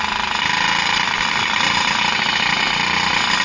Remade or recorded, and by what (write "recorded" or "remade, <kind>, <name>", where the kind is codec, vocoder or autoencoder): recorded